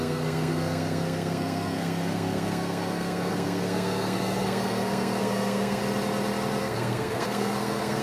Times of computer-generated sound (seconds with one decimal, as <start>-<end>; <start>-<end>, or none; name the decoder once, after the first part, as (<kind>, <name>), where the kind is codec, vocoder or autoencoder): 0.0-5.8 (codec, SNAC); 6.6-8.0

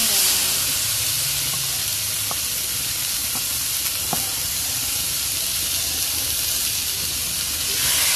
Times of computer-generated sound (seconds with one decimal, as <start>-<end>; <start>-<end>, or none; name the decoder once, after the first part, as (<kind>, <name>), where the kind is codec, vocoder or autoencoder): none

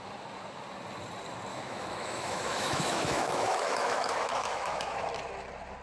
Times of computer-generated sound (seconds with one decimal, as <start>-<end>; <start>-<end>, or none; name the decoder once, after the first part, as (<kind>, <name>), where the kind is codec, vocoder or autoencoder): 1.5-5.0 (autoencoder, DAC-VAE)

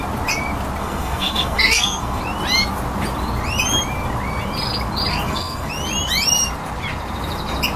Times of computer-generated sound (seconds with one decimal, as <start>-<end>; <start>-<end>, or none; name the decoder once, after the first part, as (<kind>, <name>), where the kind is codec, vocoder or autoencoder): 0.8-2.2 (codec, SNAC); 5.1-5.7

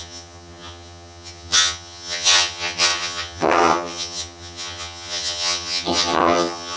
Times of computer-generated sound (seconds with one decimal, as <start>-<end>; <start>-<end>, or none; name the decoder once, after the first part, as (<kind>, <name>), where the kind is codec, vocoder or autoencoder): 0.0-6.8 (vocoder, HiFi-GAN)